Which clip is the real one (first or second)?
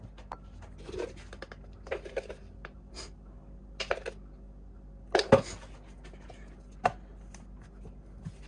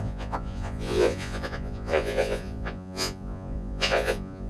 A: first